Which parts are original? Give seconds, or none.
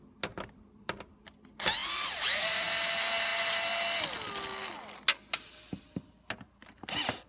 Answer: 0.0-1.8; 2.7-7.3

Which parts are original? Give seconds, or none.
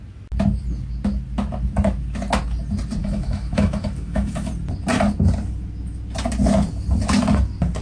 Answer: 0.0-3.0; 4.5-7.8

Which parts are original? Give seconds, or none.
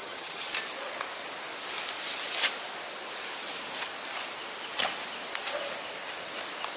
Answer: 0.5-6.8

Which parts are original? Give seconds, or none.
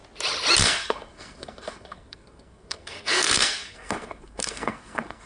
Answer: 0.0-0.6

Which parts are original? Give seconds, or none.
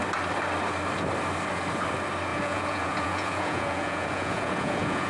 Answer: 0.0-2.3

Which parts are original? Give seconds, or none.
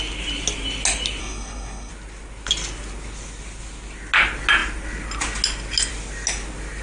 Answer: 0.0-1.2; 1.9-6.8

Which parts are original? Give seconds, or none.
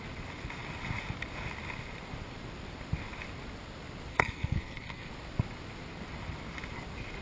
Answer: 0.0-4.1; 5.1-7.2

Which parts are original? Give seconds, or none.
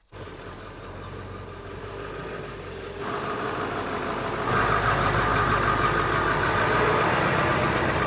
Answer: 0.0-8.1